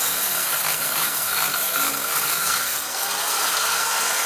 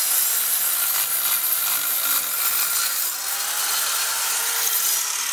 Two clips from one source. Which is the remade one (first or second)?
first